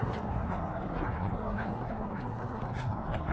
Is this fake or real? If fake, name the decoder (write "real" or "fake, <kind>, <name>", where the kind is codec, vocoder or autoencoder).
fake, codec, SNAC